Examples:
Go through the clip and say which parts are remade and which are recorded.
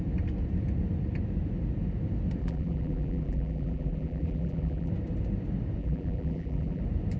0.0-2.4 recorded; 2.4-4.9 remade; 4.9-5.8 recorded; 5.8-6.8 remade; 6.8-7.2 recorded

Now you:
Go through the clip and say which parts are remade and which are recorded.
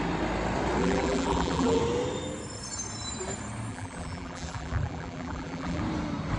0.0-0.8 recorded; 0.8-1.8 remade; 1.8-3.7 recorded; 3.7-5.8 remade; 5.8-6.4 recorded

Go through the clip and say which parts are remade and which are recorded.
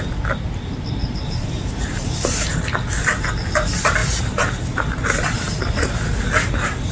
0.0-1.0 recorded; 1.0-2.6 remade; 2.6-4.0 recorded; 4.0-5.6 remade; 5.6-6.9 recorded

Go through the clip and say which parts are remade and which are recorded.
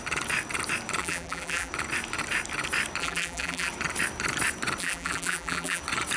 0.0-1.0 recorded; 1.0-1.7 remade; 1.7-3.0 recorded; 3.0-3.7 remade; 3.7-4.8 recorded; 4.8-5.8 remade; 5.8-6.2 recorded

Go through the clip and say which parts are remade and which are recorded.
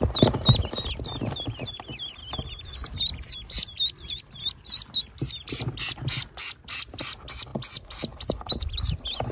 0.0-9.3 recorded